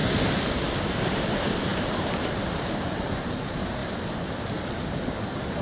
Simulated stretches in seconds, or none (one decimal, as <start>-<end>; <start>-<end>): 1.2-3.8; 4.9-5.6